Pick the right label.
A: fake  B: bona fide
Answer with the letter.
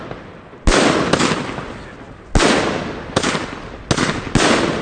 B